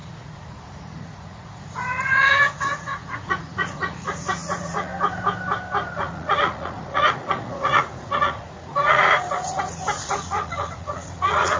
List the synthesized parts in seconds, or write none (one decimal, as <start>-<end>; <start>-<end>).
0.0-4.9; 5.9-11.6